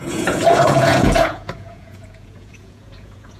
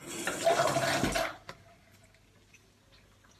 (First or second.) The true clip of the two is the second